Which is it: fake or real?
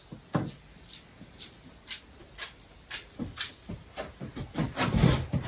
real